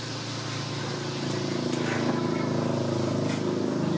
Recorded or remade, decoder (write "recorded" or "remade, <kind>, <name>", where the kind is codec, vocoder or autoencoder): recorded